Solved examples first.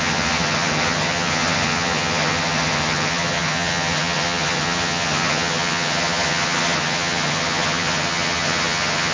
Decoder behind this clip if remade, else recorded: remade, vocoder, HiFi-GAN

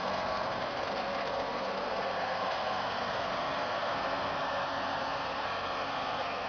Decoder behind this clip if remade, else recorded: remade, codec, SNAC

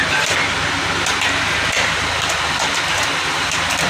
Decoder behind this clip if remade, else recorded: recorded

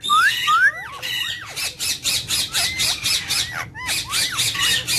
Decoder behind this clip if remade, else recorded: recorded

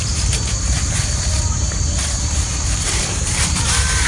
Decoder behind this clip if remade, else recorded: remade, vocoder, BigVGAN v2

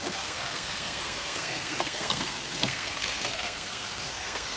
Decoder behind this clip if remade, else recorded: remade, codec, SNAC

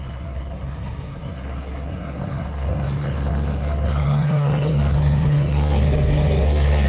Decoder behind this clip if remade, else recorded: remade, codec, SNAC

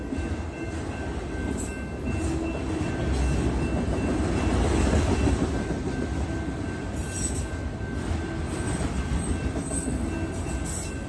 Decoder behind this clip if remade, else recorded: recorded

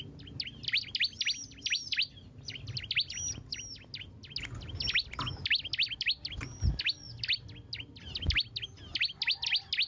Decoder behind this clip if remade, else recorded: recorded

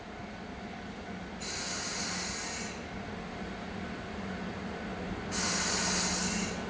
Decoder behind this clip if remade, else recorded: recorded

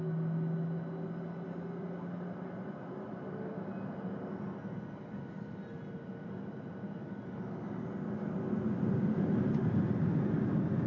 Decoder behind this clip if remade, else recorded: recorded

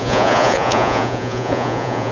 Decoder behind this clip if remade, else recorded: remade, vocoder, Vocos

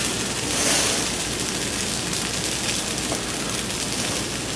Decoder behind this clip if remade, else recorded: recorded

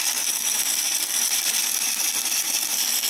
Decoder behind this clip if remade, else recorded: remade, vocoder, BigVGAN v2